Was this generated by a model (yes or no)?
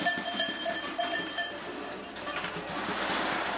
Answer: yes